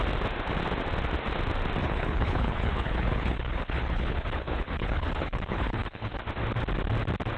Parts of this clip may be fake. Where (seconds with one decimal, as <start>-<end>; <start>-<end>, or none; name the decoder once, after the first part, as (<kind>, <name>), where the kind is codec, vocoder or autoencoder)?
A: 1.8-6.2 (codec, HILCodec)